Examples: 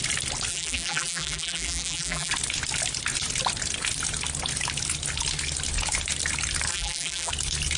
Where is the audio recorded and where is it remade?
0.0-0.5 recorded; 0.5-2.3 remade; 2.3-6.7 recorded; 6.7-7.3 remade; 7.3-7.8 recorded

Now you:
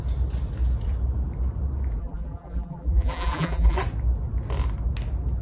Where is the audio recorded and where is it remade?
0.0-2.0 recorded; 2.0-3.8 remade; 3.8-5.4 recorded

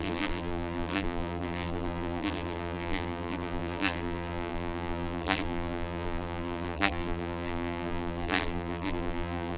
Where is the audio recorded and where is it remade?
0.0-9.6 remade